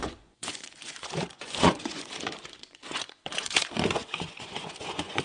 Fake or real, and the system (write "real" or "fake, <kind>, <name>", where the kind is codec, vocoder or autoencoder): fake, vocoder, Vocos